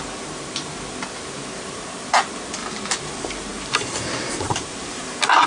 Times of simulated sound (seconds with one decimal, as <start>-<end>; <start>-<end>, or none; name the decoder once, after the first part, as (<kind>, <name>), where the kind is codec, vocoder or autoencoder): 2.6-3.1 (vocoder, BigVGAN v2); 3.5-5.5